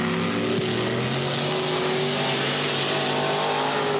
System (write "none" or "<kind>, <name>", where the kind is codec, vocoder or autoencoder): none